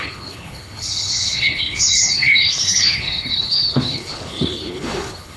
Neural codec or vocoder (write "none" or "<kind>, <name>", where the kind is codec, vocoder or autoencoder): codec, HILCodec